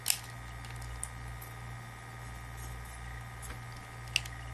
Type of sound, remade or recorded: recorded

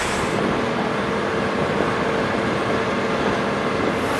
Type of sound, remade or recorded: recorded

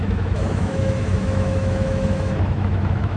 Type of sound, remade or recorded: remade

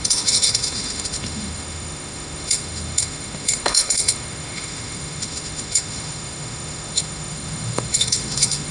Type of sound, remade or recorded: remade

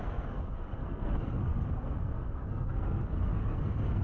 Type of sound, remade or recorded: remade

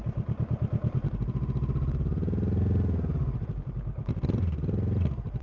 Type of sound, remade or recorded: recorded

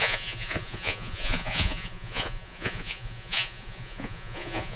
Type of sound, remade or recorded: remade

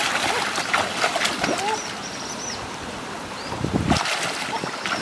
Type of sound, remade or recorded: recorded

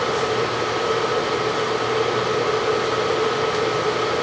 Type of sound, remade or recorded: recorded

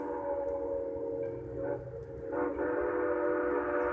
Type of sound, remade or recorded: recorded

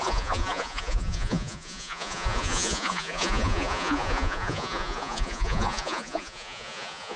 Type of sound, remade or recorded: remade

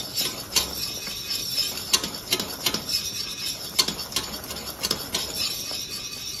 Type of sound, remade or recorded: recorded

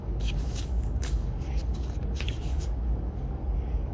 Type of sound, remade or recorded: remade